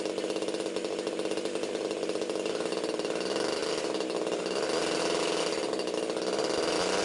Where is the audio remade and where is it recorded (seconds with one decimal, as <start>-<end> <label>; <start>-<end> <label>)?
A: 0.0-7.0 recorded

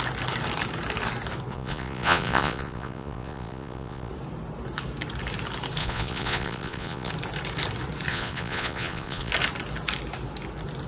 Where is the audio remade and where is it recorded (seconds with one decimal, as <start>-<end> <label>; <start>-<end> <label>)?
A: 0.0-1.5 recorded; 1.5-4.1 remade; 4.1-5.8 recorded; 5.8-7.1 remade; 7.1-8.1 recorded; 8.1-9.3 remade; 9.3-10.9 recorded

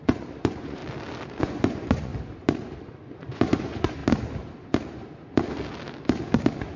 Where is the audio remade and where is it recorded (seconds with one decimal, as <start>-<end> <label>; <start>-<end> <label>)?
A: 0.0-0.8 remade; 0.8-1.4 recorded; 1.4-2.1 remade; 2.1-2.9 recorded; 2.9-4.0 remade; 4.0-6.8 recorded